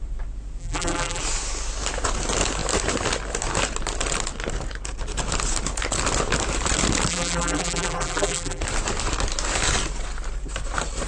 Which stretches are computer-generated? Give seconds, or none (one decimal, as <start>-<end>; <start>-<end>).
0.6-1.2; 7.1-8.6